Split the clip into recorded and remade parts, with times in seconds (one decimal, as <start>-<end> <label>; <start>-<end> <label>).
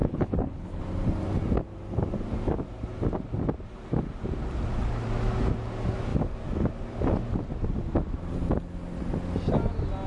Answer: 0.0-0.8 remade; 0.8-10.1 recorded